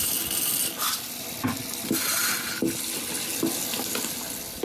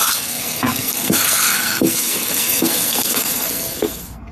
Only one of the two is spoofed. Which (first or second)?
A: second